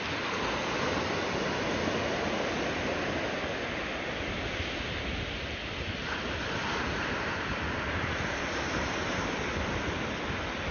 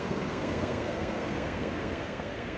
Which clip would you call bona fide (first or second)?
first